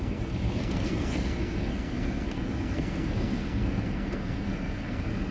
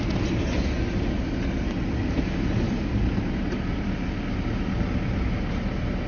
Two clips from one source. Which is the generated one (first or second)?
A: first